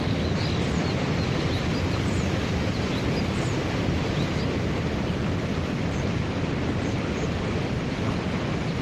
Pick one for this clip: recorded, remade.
remade